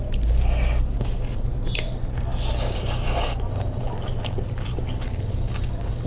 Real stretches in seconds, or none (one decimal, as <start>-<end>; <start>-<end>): 0.0-6.1